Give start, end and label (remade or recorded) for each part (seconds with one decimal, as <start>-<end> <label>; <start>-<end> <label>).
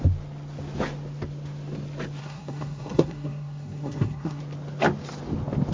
0.0-2.2 recorded; 2.2-4.4 remade; 4.4-5.7 recorded